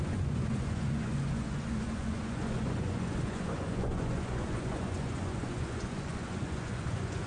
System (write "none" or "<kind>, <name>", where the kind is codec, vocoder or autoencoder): vocoder, Vocos